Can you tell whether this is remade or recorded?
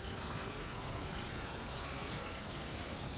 remade